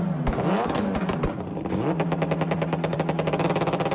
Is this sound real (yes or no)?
yes